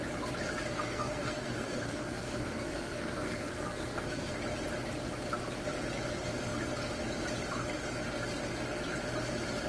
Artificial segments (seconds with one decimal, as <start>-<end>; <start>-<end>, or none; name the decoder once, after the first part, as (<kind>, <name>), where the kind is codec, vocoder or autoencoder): 0.7-4.4 (codec, SNAC)